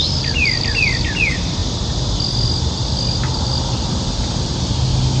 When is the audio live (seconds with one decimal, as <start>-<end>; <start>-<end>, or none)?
0.0-5.2